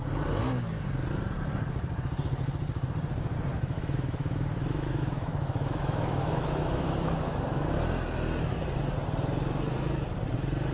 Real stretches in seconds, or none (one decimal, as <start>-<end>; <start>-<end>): 0.0-3.5; 7.7-10.7